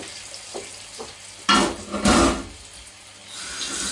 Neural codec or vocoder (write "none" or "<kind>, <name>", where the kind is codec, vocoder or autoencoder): none